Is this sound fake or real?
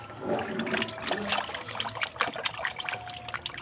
real